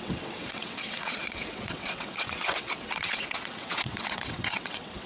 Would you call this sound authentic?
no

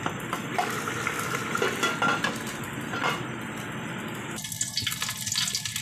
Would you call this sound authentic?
yes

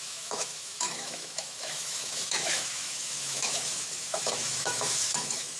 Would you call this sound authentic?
no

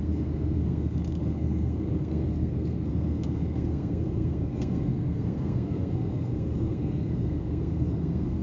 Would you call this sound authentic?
no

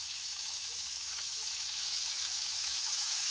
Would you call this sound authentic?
no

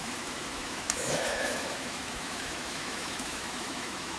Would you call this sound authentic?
no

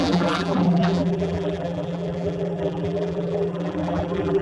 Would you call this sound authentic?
no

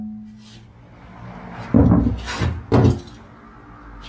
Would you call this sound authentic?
yes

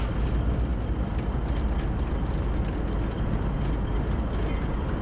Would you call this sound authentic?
yes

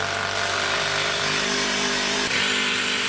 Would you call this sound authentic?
no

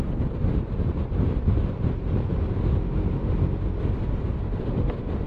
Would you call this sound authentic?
yes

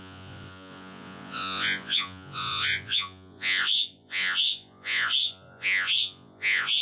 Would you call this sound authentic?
no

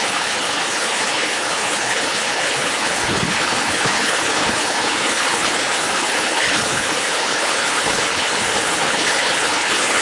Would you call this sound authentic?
no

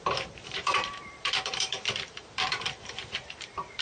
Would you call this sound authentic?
no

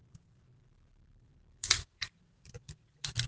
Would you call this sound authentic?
no